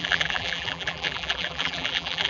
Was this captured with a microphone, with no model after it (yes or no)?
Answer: no